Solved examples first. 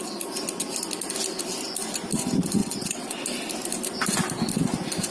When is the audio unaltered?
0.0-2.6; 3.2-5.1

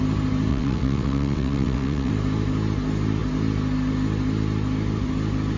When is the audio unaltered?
0.0-0.5; 2.1-5.6

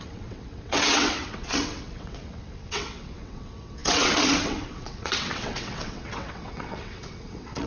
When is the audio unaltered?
none

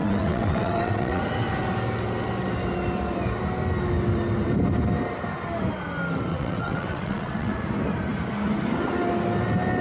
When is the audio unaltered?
1.2-6.3; 7.5-9.8